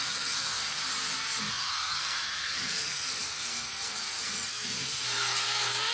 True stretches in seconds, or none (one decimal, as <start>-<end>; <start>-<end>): 0.8-1.5

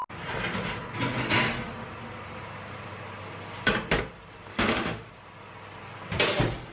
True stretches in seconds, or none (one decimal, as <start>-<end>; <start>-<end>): 0.0-4.5; 5.1-6.7

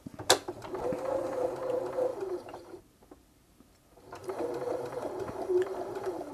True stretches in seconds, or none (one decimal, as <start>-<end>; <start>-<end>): 0.0-2.1; 2.8-4.2

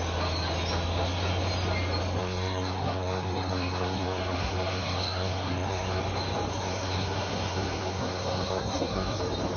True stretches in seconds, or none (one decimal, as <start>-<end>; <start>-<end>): 0.0-2.2; 6.0-6.5; 9.2-9.6

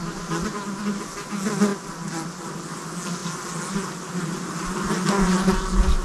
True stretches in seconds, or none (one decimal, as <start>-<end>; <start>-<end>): 0.0-6.0

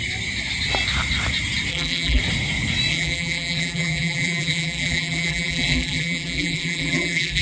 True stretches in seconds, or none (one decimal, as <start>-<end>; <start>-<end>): 0.0-1.7; 2.2-2.9

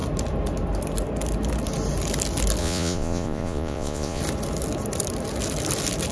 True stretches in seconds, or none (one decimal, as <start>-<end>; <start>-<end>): 0.0-2.6; 4.2-6.1